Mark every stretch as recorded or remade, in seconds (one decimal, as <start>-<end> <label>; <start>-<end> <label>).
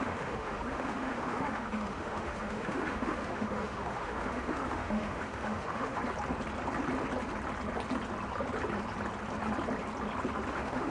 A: 0.0-6.0 remade; 6.0-10.5 recorded; 10.5-10.9 remade